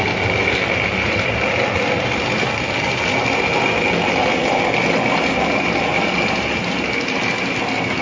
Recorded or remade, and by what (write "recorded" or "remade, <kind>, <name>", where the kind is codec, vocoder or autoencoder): recorded